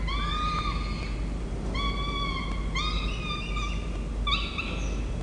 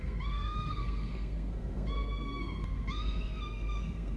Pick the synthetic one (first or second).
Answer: second